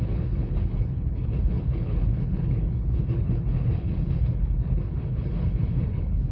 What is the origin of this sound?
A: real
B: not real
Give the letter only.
B